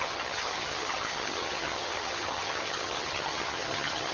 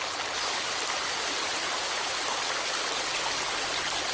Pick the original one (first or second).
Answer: second